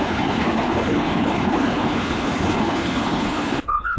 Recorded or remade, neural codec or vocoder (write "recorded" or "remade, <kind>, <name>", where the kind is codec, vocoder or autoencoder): remade, codec, HILCodec